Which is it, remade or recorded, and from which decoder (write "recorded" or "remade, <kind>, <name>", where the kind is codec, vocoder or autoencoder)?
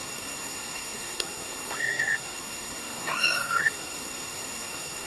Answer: remade, codec, SNAC